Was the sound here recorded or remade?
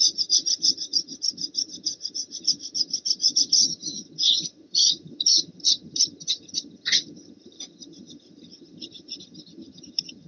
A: remade